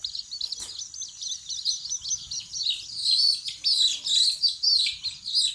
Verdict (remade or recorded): recorded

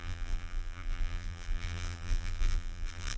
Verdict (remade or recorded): remade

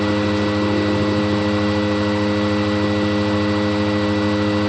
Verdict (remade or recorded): recorded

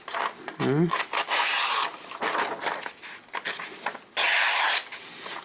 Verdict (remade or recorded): recorded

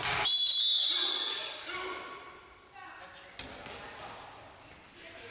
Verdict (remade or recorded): recorded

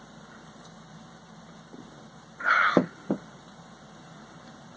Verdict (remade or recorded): remade